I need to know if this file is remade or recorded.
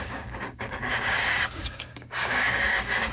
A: remade